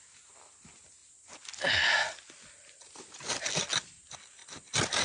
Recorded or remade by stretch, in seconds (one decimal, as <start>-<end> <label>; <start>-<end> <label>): 0.0-5.0 recorded

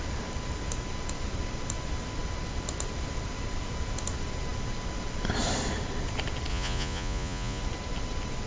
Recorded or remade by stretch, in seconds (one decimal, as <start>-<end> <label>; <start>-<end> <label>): 0.0-6.5 recorded; 6.5-7.6 remade; 7.6-8.5 recorded

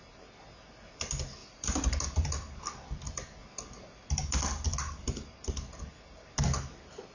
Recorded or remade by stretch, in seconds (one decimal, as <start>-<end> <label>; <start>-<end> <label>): 0.0-1.4 recorded; 1.4-2.0 remade; 2.0-4.8 recorded; 4.8-5.4 remade; 5.4-7.1 recorded

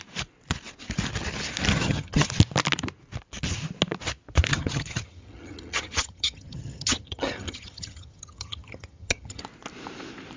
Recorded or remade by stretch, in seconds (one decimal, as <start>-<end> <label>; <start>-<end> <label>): 0.0-1.7 recorded; 1.7-2.3 remade; 2.3-4.5 recorded; 4.5-9.4 remade; 9.4-10.4 recorded

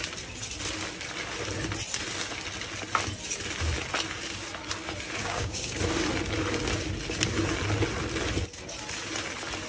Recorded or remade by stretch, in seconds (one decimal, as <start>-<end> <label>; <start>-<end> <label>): 0.0-5.2 recorded; 5.2-5.8 remade; 5.8-9.7 recorded

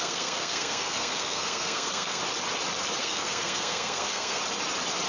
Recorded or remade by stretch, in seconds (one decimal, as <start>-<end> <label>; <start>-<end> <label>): 0.0-2.2 remade; 2.2-3.0 recorded; 3.0-4.4 remade; 4.4-5.1 recorded